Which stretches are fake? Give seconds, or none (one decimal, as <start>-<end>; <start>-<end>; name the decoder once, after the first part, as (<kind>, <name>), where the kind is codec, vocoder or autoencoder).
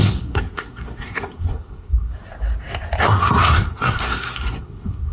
0.0-2.1 (codec, SNAC); 3.0-5.1